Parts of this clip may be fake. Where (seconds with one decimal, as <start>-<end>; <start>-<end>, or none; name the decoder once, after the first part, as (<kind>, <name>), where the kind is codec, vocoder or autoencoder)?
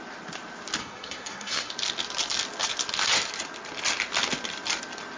0.8-1.7 (codec, SNAC)